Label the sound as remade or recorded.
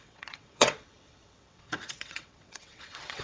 remade